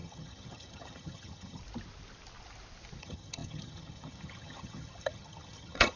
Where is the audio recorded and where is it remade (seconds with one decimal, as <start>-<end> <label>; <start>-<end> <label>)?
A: 0.0-1.6 remade; 1.6-3.0 recorded; 3.0-6.0 remade